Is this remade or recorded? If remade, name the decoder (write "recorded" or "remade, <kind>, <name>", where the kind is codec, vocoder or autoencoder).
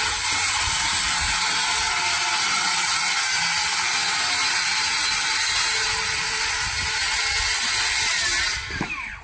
remade, vocoder, BigVGAN v2